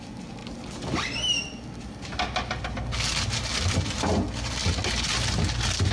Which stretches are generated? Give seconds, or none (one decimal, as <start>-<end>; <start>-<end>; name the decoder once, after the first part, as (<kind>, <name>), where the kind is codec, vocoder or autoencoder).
none